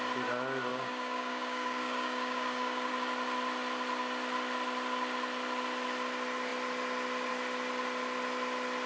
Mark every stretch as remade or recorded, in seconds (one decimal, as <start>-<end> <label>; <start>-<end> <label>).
0.0-0.7 recorded; 0.7-2.9 remade; 2.9-8.9 recorded